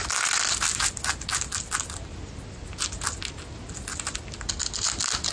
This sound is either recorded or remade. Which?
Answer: recorded